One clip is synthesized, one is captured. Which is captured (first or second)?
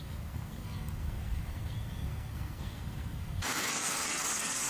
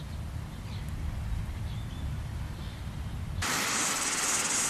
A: second